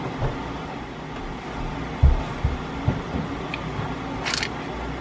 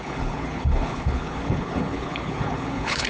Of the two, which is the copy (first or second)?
second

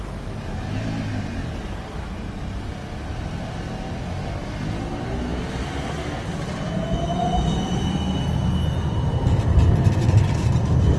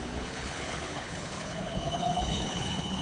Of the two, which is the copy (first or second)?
second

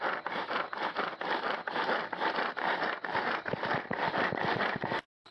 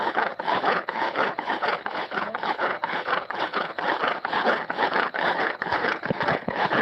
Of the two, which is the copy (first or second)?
second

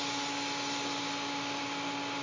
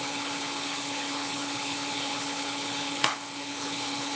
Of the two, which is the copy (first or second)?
second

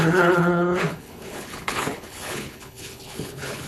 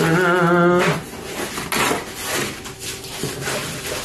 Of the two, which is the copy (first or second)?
first